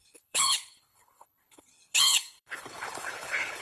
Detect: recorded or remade remade